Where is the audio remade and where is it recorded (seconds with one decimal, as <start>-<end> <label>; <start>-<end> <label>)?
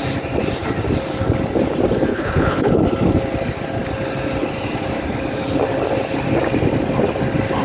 0.0-2.1 recorded; 2.1-2.7 remade; 2.7-7.6 recorded